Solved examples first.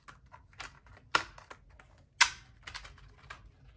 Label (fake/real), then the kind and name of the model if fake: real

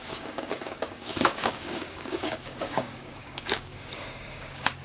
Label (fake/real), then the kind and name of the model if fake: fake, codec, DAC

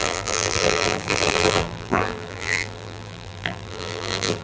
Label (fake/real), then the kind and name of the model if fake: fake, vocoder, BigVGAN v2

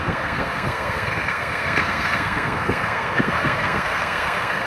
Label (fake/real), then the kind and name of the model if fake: fake, codec, SNAC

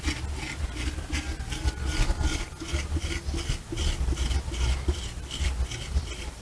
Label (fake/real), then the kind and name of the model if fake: real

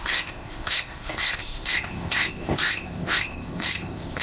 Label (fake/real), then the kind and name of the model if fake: fake, codec, ZipCodec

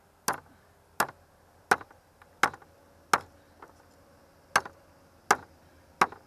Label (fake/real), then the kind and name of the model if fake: real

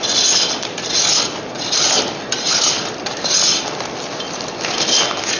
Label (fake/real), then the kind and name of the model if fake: real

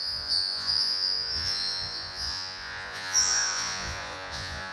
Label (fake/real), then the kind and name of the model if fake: fake, vocoder, Vocos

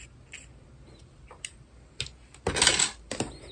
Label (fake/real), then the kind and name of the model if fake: real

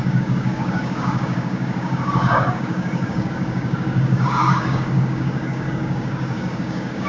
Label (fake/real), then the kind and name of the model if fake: fake, codec, DAC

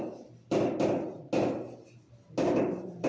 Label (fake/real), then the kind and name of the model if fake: real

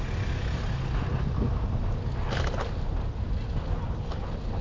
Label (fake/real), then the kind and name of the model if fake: real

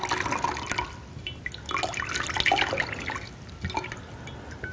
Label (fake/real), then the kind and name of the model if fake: real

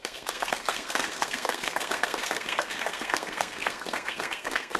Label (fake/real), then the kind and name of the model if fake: fake, codec, SNAC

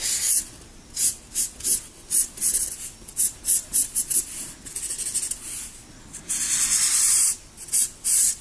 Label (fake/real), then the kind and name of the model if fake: real